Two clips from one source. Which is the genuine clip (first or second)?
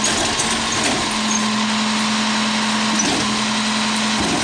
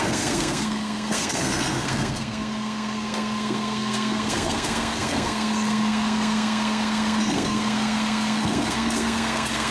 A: first